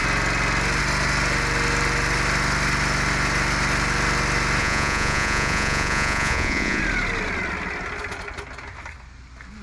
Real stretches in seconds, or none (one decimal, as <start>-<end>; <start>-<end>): 0.0-4.6; 6.8-9.6